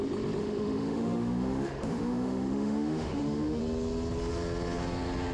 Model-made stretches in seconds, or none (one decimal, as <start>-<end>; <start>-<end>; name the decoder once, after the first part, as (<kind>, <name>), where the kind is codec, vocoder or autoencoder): 0.4-3.6 (autoencoder, DAC-VAE)